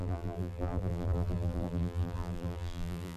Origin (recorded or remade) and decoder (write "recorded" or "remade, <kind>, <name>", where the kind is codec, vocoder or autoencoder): remade, vocoder, BigVGAN v2